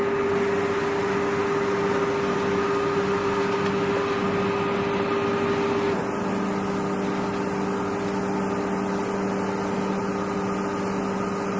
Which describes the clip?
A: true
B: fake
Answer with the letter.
A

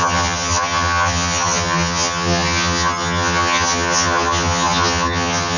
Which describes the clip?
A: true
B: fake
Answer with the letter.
B